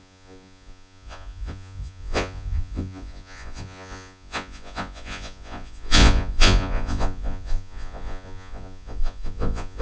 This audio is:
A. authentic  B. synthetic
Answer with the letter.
B